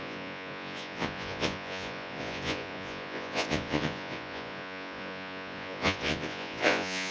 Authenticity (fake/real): fake